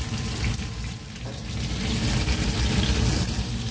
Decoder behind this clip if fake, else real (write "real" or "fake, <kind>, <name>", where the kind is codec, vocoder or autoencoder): real